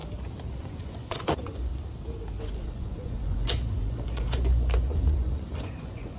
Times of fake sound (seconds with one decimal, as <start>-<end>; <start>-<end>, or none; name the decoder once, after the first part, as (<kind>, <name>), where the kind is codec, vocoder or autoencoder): 0.6-1.7 (vocoder, Vocos); 2.4-6.2